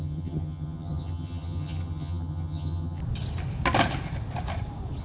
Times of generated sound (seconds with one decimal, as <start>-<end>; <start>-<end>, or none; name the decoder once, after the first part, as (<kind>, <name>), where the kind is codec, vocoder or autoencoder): 0.0-3.0 (vocoder, HiFi-GAN)

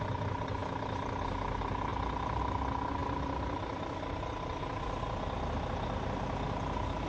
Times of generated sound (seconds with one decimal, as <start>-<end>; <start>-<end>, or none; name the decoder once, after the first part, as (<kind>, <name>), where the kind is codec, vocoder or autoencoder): none

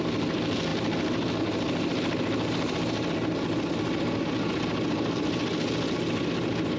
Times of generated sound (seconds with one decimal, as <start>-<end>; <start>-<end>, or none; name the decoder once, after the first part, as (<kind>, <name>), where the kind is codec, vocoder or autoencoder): none